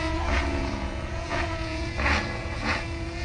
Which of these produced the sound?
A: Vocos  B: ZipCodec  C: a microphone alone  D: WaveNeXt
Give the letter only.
A